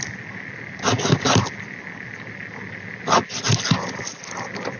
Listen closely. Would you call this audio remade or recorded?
recorded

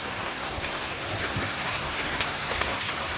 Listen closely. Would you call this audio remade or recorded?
remade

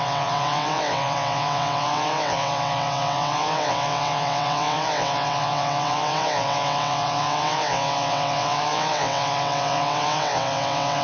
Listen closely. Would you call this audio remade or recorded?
remade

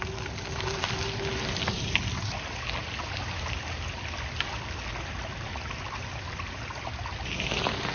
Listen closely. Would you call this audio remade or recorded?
recorded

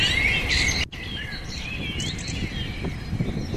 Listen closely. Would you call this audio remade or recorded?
recorded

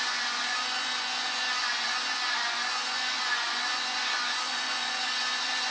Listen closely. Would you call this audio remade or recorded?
remade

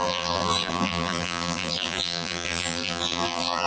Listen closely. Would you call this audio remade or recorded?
remade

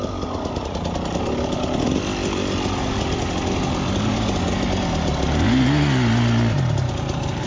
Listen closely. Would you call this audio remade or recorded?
recorded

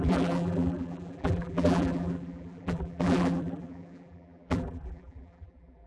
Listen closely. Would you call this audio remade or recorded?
remade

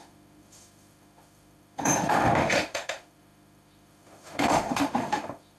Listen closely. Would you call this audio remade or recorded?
remade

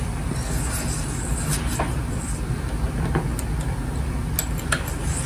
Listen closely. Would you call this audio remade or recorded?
recorded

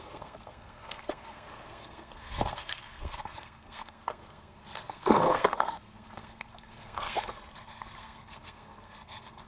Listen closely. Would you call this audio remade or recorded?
remade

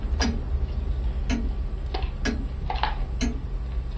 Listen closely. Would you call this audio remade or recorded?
recorded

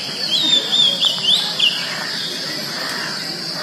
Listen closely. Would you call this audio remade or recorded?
remade